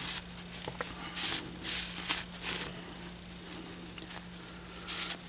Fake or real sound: real